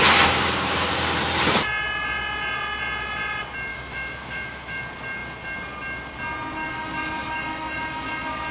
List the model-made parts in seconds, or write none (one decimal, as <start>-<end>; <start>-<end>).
3.7-4.8